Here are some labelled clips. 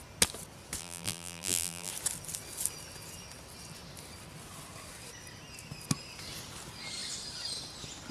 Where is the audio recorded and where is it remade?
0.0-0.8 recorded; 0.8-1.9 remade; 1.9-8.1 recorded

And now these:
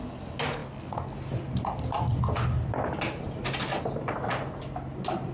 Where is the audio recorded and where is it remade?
0.0-5.3 recorded